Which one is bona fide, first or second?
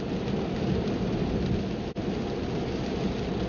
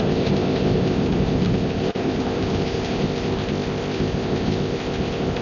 first